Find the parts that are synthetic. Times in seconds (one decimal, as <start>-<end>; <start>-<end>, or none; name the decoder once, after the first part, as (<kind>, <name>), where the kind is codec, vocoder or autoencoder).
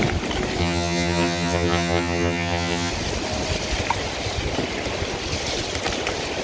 0.6-2.9 (vocoder, HiFi-GAN)